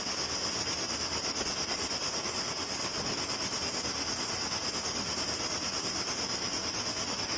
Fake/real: real